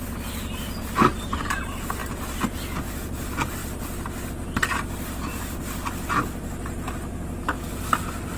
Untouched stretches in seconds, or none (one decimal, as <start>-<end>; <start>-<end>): 0.0-8.4